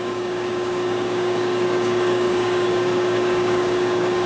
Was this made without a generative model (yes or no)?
no